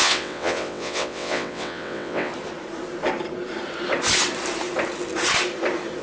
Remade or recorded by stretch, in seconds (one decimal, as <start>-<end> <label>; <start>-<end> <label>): 0.0-2.3 remade; 2.3-6.0 recorded